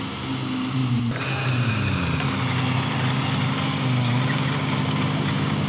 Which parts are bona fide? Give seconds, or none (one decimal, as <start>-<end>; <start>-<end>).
0.0-5.7